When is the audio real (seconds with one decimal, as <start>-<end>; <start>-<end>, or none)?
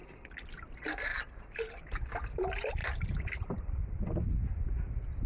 0.5-1.1; 2.1-2.8; 4.1-5.3